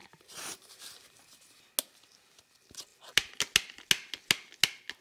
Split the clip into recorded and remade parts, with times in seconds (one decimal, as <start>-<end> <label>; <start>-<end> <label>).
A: 0.0-1.6 remade; 1.6-5.0 recorded